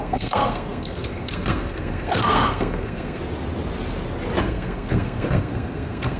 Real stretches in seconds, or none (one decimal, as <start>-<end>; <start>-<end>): 3.2-4.4